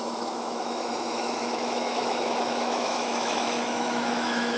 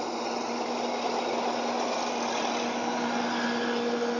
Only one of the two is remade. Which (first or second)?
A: first